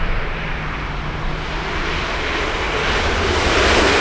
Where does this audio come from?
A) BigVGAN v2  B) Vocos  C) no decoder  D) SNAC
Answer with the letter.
C